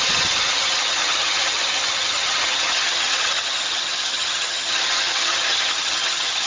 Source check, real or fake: fake